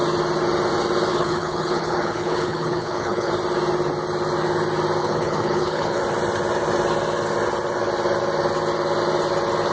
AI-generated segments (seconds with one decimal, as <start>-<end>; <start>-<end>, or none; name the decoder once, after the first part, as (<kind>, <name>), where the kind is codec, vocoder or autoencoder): 1.1-3.3 (codec, HILCodec); 5.0-6.0